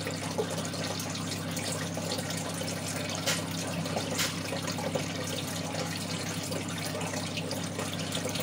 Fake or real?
real